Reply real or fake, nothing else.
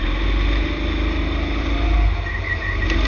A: real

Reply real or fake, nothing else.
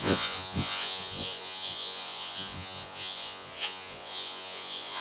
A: fake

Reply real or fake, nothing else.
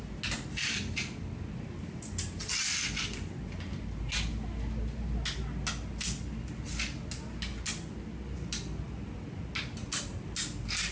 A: real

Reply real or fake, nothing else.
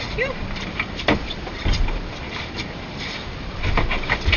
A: real